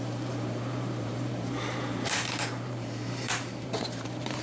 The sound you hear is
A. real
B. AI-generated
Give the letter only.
B